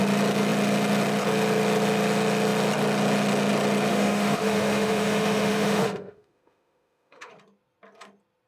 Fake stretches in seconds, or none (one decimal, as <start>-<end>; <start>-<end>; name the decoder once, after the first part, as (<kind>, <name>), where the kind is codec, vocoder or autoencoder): 3.9-7.3 (autoencoder, DAC-VAE)